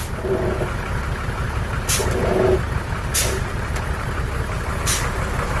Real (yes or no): no